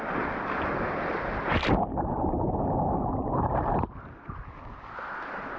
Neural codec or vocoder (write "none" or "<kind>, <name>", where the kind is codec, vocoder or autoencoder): none